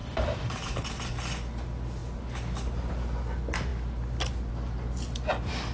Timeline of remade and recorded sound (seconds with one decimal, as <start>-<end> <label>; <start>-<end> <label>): 0.0-0.8 remade; 0.8-5.7 recorded